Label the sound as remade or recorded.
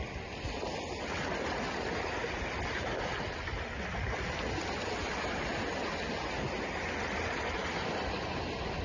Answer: recorded